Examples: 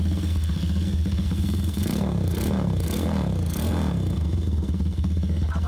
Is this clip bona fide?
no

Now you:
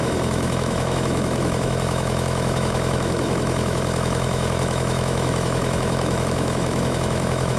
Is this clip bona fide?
no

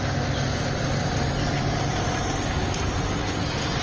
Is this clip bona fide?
yes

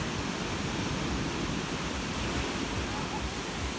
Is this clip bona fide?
yes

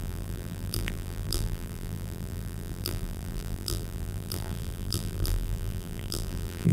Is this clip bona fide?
no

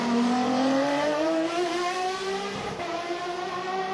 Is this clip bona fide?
no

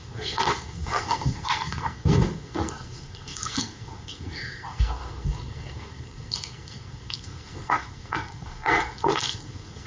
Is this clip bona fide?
no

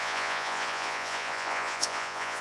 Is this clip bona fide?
no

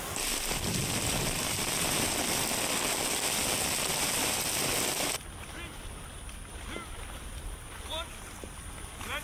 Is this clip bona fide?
yes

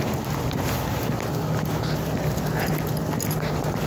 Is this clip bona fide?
yes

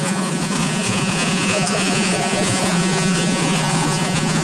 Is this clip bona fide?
no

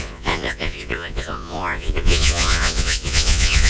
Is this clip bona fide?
no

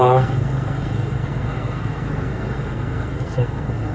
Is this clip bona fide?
no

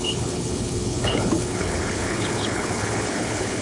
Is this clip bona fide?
no